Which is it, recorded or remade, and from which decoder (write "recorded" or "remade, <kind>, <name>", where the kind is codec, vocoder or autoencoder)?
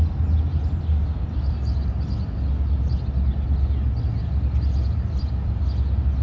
recorded